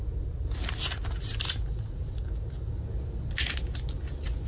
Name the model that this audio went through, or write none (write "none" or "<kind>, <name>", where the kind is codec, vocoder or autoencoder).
none